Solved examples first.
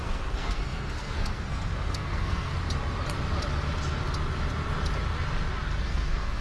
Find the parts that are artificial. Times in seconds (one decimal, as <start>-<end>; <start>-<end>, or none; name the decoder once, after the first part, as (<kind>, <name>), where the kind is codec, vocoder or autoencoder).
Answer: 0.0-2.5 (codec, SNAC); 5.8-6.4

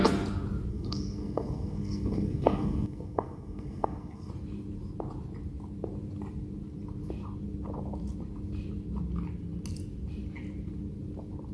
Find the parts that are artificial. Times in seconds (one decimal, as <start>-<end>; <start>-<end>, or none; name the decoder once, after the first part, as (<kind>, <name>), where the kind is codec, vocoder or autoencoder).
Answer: 0.7-4.3 (codec, SNAC)

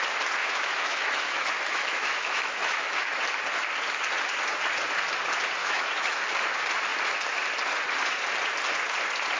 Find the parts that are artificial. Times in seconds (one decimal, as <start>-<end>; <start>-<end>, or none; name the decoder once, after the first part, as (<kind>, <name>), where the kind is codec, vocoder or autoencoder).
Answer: 0.4-3.2 (autoencoder, DAC-VAE); 5.6-6.2

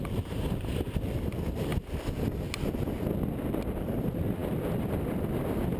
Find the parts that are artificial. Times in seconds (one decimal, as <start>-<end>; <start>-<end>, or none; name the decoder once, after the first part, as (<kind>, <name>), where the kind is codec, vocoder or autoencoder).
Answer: 4.4-5.8 (vocoder, BigVGAN v2)

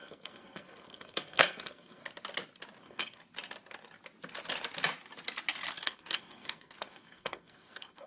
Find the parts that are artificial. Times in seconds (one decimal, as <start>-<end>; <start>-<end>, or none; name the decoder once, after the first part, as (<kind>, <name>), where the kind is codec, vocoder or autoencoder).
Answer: 0.0-2.0 (codec, SNAC); 2.8-3.2; 5.7-8.1

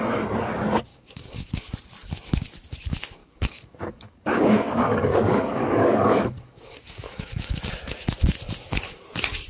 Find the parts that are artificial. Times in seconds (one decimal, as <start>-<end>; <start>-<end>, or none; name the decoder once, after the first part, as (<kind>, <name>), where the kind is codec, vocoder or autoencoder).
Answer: 0.9-1.5 (codec, DAC); 3.2-7.6

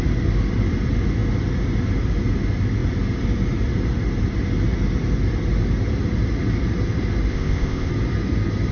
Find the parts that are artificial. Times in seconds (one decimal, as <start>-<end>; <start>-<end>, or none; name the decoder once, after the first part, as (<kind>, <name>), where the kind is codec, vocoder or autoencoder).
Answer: 7.3-7.9 (codec, ZipCodec)